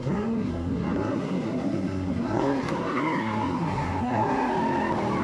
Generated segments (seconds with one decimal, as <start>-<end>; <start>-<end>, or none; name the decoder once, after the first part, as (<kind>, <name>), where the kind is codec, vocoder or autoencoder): 0.0-4.5 (codec, SNAC)